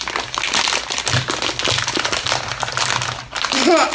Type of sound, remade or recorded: recorded